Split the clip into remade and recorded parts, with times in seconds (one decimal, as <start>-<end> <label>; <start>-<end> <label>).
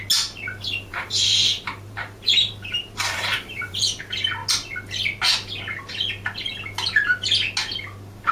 0.0-0.9 recorded; 0.9-3.8 remade; 3.8-8.3 recorded